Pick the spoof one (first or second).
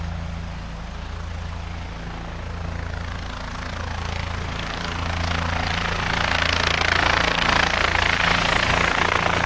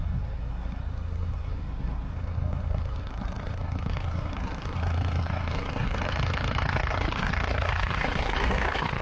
second